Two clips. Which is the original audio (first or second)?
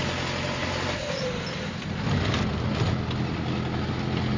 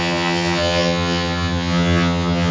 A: first